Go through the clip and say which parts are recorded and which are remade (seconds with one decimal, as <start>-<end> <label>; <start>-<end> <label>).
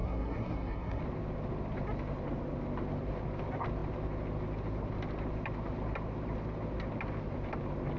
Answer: 0.0-1.0 remade; 1.0-8.0 recorded